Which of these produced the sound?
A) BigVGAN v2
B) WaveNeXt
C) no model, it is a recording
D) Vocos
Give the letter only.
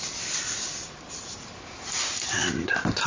C